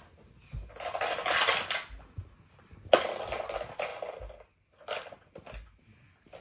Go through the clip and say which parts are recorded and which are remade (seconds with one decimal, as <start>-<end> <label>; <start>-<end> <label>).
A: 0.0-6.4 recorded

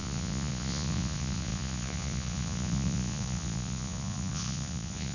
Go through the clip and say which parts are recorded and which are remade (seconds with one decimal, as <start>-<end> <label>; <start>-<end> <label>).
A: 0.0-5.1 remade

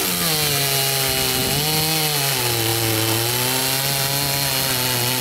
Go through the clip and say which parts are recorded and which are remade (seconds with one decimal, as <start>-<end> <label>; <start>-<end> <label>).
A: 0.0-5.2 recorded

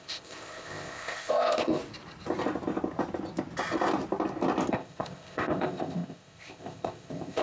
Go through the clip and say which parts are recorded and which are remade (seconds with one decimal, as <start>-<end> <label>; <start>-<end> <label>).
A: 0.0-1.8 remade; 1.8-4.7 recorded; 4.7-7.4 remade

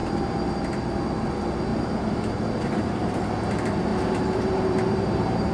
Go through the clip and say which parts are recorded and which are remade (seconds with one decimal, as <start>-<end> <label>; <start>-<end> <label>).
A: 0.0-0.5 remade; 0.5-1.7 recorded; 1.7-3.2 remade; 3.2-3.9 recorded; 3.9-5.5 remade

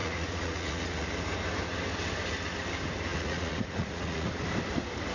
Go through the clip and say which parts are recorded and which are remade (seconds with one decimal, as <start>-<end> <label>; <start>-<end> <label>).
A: 0.0-1.1 remade; 1.1-3.1 recorded; 3.1-4.3 remade; 4.3-5.1 recorded

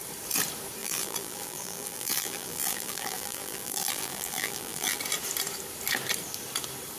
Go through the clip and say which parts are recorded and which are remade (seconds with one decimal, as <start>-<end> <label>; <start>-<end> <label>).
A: 0.0-0.8 recorded; 0.8-5.0 remade; 5.0-7.0 recorded